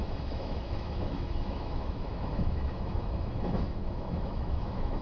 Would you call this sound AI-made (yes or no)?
yes